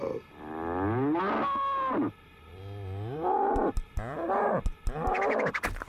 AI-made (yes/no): no